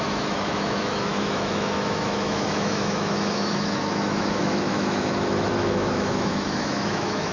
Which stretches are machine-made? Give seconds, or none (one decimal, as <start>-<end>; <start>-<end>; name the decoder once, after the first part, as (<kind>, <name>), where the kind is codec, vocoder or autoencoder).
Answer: 0.0-7.3 (autoencoder, DAC-VAE)